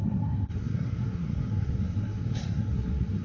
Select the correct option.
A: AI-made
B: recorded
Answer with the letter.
A